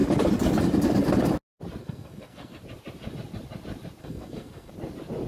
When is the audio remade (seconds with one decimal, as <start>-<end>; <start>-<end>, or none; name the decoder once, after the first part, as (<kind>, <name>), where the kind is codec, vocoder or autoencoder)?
1.8-2.6 (codec, SNAC); 4.0-4.7